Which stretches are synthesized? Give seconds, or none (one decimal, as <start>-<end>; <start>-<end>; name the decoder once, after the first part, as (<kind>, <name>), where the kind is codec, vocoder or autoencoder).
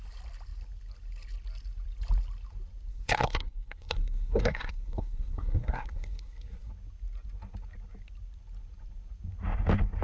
2.9-6.7 (codec, SNAC)